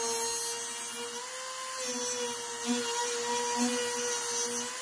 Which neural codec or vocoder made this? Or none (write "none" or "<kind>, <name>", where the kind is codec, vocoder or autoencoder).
none